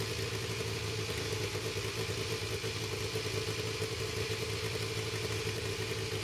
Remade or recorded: recorded